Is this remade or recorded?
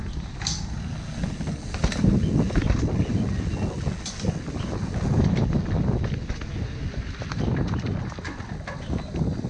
recorded